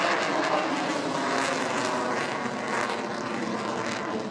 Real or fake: real